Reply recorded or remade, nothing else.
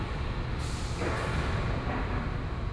recorded